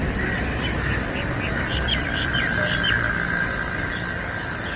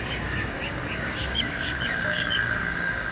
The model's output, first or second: second